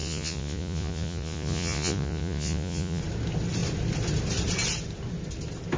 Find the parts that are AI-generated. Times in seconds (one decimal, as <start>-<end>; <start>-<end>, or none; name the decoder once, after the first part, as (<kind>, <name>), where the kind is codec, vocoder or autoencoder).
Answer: 0.0-3.0 (vocoder, Vocos)